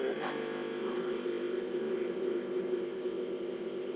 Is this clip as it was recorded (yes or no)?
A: no